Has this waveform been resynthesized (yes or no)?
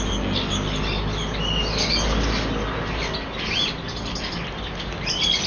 no